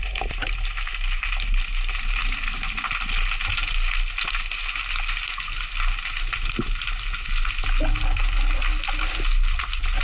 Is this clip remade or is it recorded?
recorded